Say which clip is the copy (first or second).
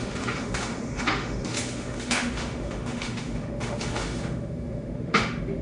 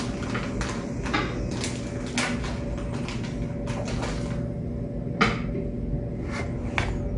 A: first